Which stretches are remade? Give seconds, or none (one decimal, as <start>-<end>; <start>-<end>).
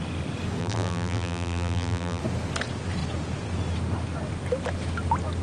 0.6-2.2